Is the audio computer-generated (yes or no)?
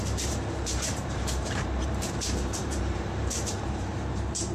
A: yes